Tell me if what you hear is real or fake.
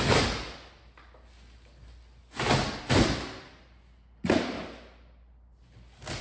real